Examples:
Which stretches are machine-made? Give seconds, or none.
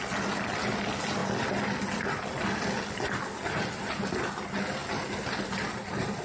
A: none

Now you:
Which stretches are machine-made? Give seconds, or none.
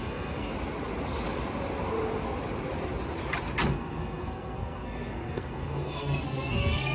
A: 0.0-0.5 (codec, SNAC); 3.7-6.9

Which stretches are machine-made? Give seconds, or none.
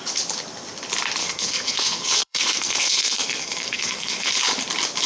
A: 1.2-4.3 (codec, SNAC)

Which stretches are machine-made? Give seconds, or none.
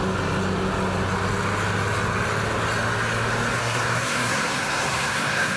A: 3.6-5.6 (codec, SNAC)